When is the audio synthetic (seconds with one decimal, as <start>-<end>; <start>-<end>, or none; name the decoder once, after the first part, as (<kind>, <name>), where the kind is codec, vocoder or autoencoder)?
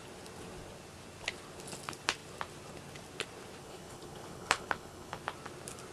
3.6-5.2 (codec, HILCodec)